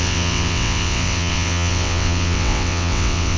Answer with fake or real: fake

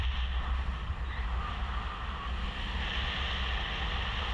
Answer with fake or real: real